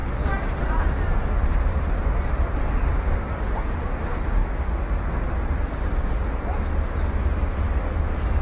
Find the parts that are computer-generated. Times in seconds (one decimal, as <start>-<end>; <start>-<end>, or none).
0.6-4.4; 5.1-5.9; 6.9-8.4